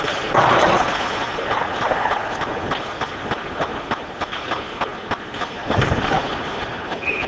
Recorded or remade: recorded